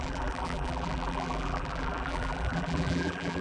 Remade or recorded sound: remade